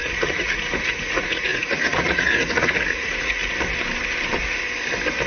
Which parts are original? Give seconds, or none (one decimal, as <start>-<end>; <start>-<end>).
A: 3.4-5.3